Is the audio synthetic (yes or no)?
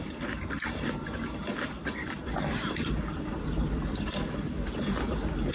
no